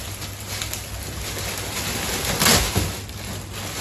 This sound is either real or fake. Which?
real